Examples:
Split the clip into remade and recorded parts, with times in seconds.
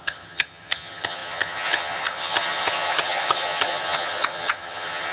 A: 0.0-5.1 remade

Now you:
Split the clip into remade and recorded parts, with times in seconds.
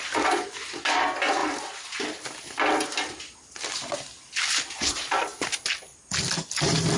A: 0.0-7.0 recorded